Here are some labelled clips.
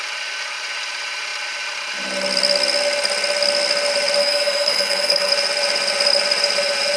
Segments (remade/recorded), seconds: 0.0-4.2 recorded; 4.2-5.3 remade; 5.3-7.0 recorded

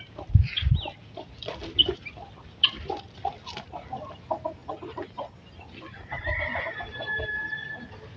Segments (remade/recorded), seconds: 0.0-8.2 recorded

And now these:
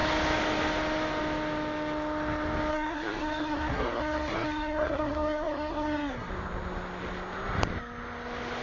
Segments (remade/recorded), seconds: 0.0-2.7 recorded; 2.7-6.3 remade; 6.3-8.6 recorded